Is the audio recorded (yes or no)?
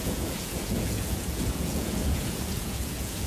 no